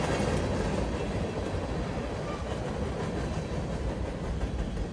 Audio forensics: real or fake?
real